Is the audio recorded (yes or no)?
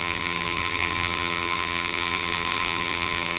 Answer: no